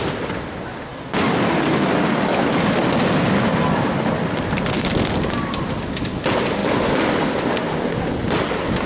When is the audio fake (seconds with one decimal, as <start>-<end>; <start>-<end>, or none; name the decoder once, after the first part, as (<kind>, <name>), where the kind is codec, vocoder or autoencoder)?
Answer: none

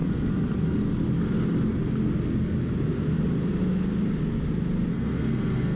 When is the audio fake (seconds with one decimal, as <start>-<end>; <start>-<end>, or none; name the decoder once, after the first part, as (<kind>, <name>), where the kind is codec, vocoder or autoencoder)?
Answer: 4.9-5.8 (codec, SNAC)

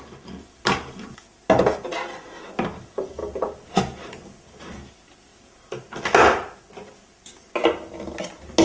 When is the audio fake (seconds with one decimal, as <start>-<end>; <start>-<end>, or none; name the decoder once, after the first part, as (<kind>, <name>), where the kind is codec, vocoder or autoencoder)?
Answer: none

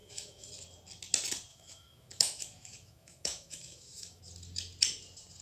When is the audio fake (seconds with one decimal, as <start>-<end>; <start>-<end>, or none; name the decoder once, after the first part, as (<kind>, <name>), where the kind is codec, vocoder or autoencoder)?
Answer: 0.0-0.5 (autoencoder, DAC-VAE); 1.5-4.2

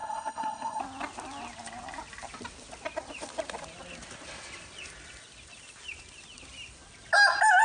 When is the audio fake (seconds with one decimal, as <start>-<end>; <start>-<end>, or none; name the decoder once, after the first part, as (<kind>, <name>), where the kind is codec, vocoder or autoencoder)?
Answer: 0.0-0.8 (codec, SNAC)

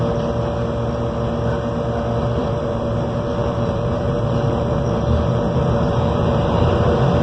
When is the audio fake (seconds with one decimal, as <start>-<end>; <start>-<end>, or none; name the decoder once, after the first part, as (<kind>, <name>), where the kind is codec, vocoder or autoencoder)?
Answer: 2.4-6.7 (vocoder, BigVGAN v2)

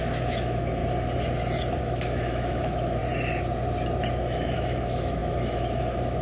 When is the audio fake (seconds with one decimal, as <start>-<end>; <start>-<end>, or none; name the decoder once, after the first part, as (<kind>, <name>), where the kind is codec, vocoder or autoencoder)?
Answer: 0.0-0.8 (autoencoder, DAC-VAE); 1.8-3.0; 4.2-6.2

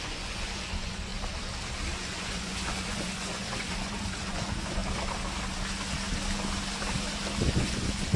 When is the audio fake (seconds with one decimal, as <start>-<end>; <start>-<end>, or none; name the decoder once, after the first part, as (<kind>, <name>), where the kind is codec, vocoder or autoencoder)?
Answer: 0.0-1.1 (vocoder, Vocos); 2.0-4.8; 7.5-8.2